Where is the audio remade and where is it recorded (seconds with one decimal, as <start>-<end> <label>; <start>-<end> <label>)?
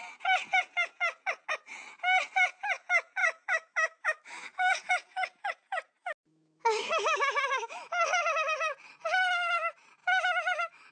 0.0-3.2 recorded; 3.2-4.7 remade; 4.7-6.3 recorded; 6.3-7.9 remade; 7.9-10.0 recorded; 10.0-10.9 remade